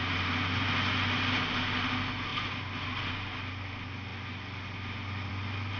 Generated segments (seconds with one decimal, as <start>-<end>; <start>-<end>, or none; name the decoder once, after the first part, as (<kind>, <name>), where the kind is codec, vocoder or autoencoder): none